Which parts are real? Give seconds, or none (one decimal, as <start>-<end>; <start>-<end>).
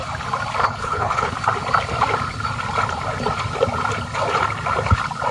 0.0-0.6; 1.3-5.3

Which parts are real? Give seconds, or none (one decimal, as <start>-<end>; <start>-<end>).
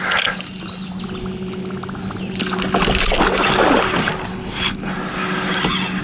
0.0-4.3; 4.9-6.0